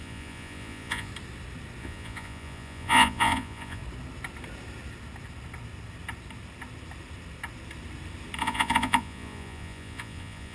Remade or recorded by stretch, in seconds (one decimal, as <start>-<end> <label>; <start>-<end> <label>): 0.0-1.1 remade; 1.1-1.8 recorded; 1.8-3.8 remade; 3.8-8.4 recorded; 8.4-10.5 remade